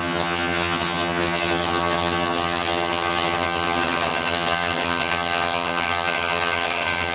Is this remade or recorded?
remade